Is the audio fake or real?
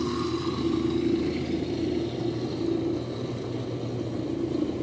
real